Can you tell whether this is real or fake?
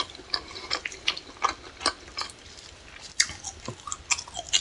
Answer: real